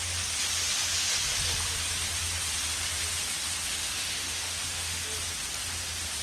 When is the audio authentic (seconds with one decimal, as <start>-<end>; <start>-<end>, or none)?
0.0-3.7; 5.0-6.2

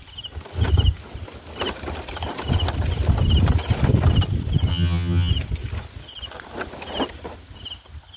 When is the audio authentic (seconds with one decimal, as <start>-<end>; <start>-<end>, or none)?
0.0-4.7; 5.3-8.2

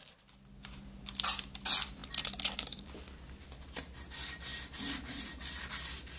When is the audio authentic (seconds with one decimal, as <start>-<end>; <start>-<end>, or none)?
0.0-6.2

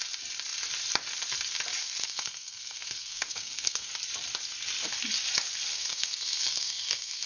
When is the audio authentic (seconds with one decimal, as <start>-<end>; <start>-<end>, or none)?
0.0-2.0; 3.9-5.7